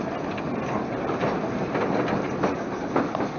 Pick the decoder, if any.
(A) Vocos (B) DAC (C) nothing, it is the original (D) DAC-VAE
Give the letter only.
C